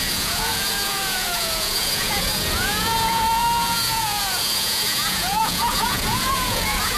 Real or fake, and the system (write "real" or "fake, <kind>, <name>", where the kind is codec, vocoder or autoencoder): fake, vocoder, Vocos